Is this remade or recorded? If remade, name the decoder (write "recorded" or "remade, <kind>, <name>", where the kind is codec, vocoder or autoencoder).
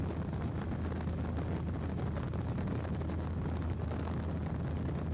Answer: recorded